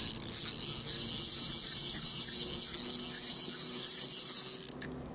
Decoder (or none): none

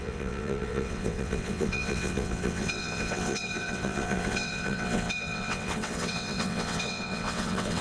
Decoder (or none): vocoder, WaveNeXt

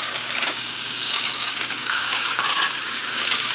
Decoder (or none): codec, DAC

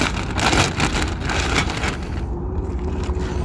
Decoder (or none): none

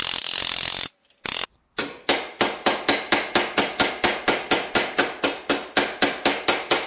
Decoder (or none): none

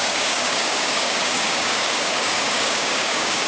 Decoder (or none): codec, DAC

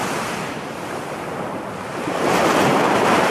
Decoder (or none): none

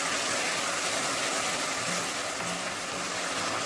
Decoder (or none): none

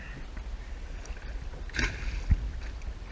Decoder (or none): none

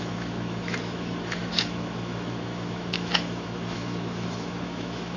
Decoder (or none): autoencoder, DAC-VAE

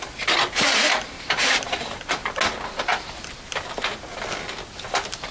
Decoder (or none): none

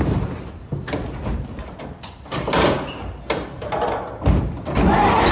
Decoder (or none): none